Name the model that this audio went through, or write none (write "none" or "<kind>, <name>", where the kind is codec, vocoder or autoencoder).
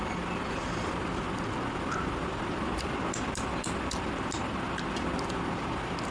none